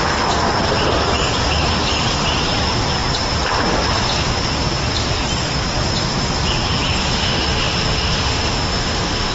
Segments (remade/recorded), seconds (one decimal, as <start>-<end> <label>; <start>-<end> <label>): 0.0-7.0 recorded; 7.0-9.3 remade